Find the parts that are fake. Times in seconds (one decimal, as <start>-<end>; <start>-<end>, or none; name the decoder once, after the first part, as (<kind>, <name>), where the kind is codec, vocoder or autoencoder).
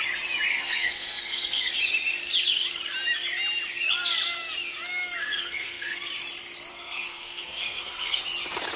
0.5-1.7 (codec, SNAC); 5.2-6.1; 6.7-8.2